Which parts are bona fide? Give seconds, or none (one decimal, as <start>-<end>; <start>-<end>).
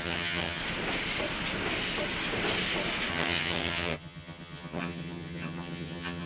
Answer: 0.6-3.1